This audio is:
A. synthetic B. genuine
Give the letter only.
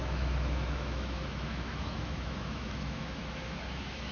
A